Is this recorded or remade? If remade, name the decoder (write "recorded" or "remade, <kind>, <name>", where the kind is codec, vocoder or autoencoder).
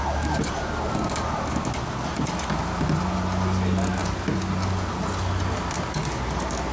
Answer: recorded